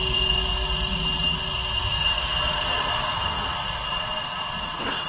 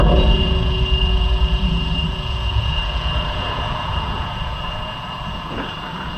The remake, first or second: second